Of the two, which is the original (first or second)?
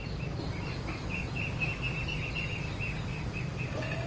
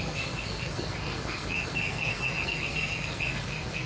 first